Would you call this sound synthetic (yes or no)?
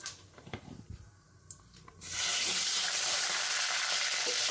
yes